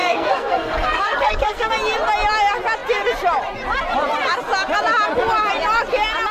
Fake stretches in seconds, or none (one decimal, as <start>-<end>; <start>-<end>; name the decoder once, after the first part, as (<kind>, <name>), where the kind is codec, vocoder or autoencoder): 0.0-1.7 (codec, SNAC)